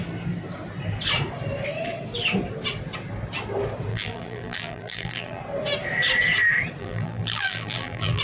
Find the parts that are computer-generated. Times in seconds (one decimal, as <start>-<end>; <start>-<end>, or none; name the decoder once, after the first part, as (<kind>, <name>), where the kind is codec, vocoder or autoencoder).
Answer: 3.9-5.4 (vocoder, BigVGAN v2); 6.8-8.2